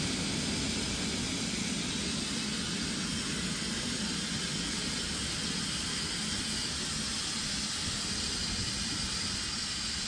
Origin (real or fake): real